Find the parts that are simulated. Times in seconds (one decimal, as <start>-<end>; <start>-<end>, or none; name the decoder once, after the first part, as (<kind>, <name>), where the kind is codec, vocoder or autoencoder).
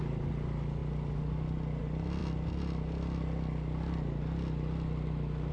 none